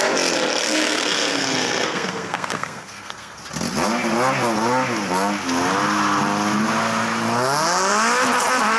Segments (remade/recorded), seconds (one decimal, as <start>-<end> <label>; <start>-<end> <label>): 0.0-0.6 recorded; 0.6-3.4 remade; 3.4-8.8 recorded

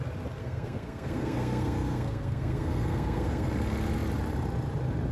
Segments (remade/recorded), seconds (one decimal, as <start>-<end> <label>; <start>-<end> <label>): 0.0-0.4 recorded; 0.4-3.5 remade; 3.5-5.1 recorded

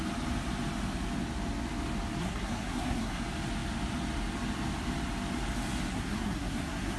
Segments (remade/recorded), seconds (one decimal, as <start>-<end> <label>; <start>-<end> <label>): 0.0-2.2 recorded; 2.2-3.2 remade; 3.2-5.9 recorded; 5.9-7.0 remade

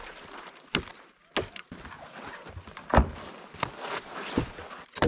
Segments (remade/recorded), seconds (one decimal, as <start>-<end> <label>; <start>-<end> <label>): 0.0-5.1 recorded

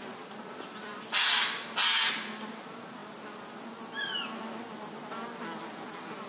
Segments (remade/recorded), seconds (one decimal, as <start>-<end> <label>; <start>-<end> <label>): 0.0-6.3 recorded

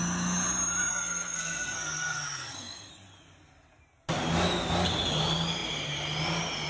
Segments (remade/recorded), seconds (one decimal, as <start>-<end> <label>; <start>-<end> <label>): 0.0-0.9 recorded; 0.9-2.9 remade; 2.9-6.7 recorded

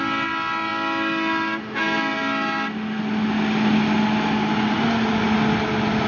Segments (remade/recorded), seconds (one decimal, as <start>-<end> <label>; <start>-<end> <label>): 0.0-6.1 recorded